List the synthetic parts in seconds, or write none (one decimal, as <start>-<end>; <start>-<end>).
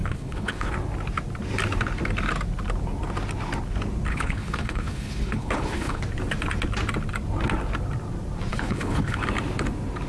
0.0-0.7; 4.1-6.0; 8.5-9.2